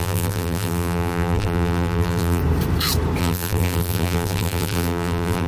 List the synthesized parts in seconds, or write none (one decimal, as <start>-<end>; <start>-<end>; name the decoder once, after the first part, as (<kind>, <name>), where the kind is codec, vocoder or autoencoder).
0.0-2.4 (vocoder, BigVGAN v2); 3.2-5.5